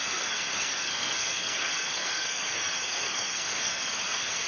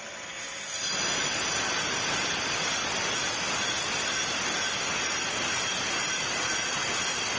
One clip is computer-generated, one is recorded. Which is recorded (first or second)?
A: second